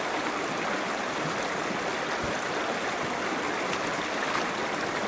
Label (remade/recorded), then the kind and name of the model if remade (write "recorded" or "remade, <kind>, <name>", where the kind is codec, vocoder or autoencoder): recorded